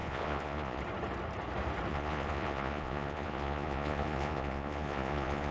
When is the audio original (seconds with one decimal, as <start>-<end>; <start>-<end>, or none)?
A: 0.8-1.9